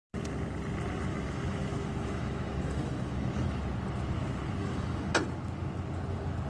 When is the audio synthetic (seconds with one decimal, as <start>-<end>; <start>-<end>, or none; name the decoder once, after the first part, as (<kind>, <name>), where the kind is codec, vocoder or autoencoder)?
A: 1.1-3.6 (autoencoder, DAC-VAE); 4.6-5.1